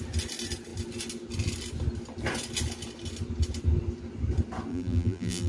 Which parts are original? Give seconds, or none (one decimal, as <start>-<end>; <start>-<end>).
0.0-4.7